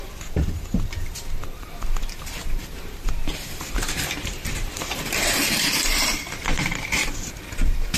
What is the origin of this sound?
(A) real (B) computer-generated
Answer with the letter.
B